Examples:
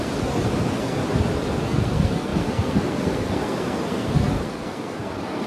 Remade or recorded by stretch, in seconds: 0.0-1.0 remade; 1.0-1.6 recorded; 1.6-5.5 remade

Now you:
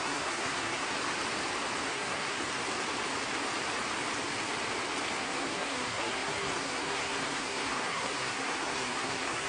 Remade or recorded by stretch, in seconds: 0.0-0.9 remade; 0.9-1.9 recorded; 1.9-2.4 remade; 2.4-5.2 recorded; 5.2-9.5 remade